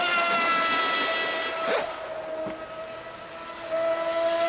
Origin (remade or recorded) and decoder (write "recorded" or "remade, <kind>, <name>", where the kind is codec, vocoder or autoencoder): recorded